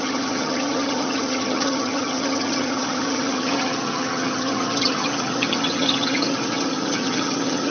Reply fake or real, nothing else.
fake